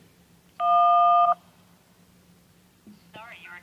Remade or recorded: recorded